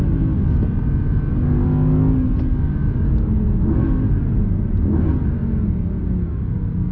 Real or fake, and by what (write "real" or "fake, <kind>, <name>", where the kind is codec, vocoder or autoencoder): real